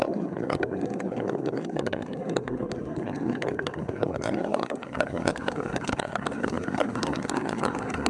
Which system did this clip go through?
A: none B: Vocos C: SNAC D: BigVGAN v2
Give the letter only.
C